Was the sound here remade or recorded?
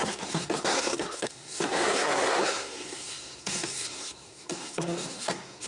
remade